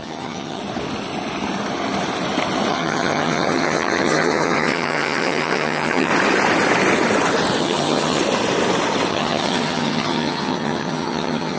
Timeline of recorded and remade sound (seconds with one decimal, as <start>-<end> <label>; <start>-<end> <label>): 0.0-0.6 remade; 0.6-2.7 recorded; 2.7-6.1 remade; 6.1-7.6 recorded; 7.6-8.2 remade; 8.2-9.1 recorded; 9.1-11.6 remade